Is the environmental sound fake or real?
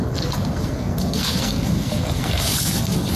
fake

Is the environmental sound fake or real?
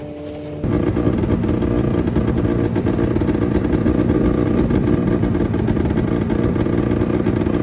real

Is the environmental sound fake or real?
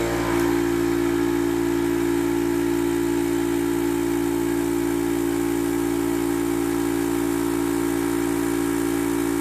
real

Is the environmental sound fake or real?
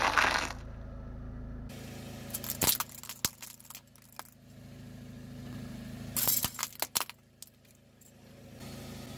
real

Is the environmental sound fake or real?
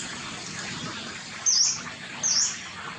real